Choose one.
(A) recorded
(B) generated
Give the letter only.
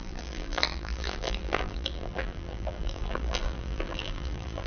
B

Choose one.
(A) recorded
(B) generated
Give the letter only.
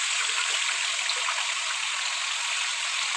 A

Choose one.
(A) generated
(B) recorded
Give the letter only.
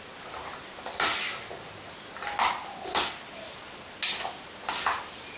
B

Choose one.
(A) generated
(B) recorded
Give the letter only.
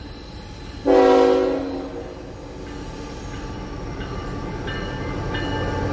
B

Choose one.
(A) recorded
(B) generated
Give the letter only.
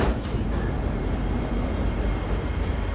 B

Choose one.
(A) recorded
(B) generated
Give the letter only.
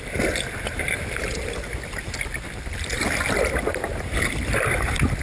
A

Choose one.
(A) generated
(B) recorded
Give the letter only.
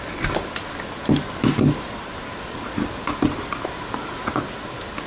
B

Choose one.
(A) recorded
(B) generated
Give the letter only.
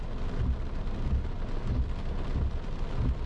A